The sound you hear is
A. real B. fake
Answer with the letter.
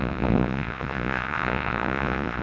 B